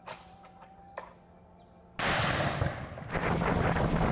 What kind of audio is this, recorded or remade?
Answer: recorded